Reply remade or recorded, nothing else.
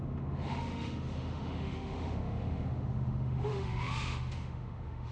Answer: remade